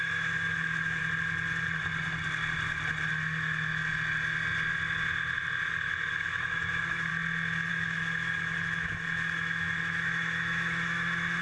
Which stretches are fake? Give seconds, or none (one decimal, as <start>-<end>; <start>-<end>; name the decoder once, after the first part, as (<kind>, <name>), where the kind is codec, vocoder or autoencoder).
0.0-1.0 (autoencoder, DAC-VAE); 5.7-7.1; 7.7-11.4